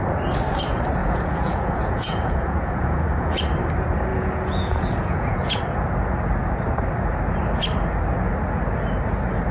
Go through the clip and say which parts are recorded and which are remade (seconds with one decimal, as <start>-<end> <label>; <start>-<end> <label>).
0.0-1.0 recorded; 1.0-3.4 remade; 3.4-4.1 recorded; 4.1-5.6 remade; 5.6-9.5 recorded